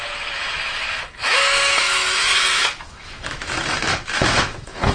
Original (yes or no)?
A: no